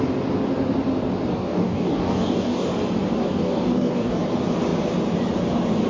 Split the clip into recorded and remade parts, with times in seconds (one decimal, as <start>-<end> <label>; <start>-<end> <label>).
0.0-1.3 recorded; 1.3-2.7 remade; 2.7-3.2 recorded; 3.2-4.2 remade; 4.2-5.9 recorded